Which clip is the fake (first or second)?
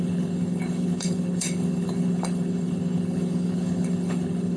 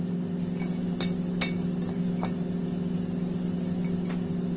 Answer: first